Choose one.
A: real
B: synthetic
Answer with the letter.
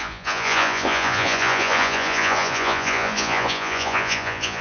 B